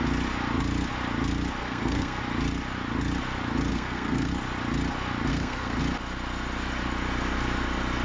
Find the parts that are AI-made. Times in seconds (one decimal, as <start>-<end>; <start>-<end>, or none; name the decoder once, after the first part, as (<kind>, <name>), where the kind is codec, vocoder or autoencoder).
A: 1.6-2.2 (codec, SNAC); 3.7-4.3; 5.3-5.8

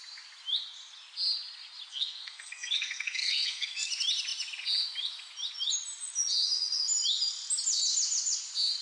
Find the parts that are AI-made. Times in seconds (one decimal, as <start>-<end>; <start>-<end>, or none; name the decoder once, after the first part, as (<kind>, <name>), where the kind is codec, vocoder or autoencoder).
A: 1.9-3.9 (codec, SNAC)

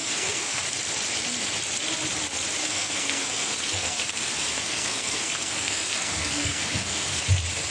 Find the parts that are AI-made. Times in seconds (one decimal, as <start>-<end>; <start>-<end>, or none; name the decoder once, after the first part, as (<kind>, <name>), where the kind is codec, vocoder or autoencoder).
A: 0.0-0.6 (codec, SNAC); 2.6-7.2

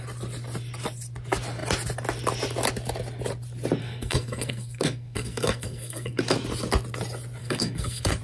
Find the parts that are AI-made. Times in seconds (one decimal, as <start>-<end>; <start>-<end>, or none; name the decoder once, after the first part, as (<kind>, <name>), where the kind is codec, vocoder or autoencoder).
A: 3.8-6.2 (codec, SNAC); 7.4-8.2

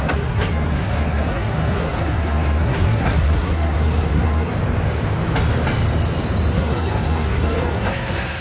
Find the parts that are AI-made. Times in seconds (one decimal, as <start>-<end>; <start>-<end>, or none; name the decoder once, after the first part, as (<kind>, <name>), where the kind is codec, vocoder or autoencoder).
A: 0.0-4.5 (codec, SNAC); 6.5-8.4